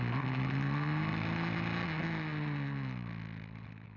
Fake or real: real